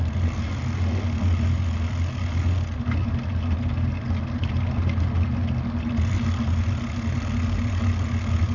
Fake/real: real